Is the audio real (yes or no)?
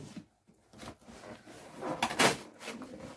yes